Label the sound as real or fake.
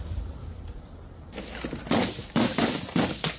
real